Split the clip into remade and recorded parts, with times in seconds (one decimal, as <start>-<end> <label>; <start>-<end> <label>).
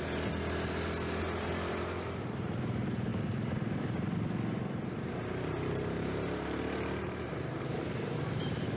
0.0-3.1 recorded; 3.1-7.6 remade; 7.6-8.8 recorded